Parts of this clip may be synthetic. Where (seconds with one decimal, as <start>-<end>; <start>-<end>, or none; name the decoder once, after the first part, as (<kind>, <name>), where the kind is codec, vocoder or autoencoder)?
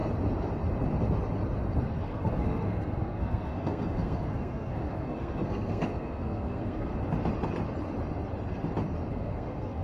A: 1.8-6.9 (codec, SNAC); 9.1-9.8